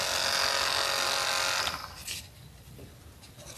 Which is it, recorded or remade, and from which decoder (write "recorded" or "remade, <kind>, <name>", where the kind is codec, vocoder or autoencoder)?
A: recorded